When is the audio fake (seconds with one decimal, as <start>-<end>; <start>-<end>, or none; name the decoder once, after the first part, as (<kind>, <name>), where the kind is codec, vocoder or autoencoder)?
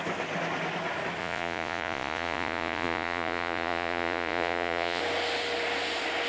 1.2-5.0 (vocoder, Vocos)